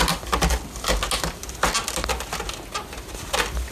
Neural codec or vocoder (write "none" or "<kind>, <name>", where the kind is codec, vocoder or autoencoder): none